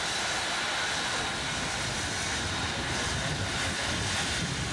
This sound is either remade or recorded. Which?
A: recorded